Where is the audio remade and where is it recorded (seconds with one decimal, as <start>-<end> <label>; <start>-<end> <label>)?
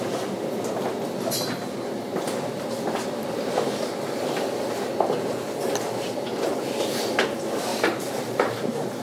0.0-7.7 recorded; 7.7-8.5 remade; 8.5-9.0 recorded